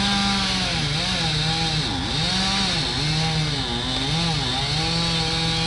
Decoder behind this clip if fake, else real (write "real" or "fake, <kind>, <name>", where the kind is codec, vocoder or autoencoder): real